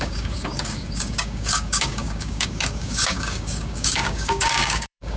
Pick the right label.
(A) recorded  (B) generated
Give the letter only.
B